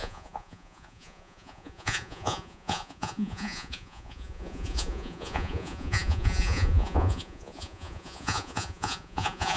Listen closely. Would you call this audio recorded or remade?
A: remade